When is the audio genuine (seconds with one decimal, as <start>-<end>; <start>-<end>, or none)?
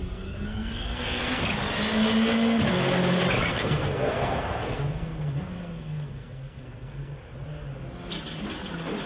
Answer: 1.4-3.5; 7.2-9.1